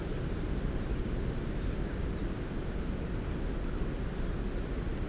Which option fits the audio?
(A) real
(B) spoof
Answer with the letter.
A